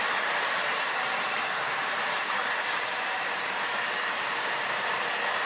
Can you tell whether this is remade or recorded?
remade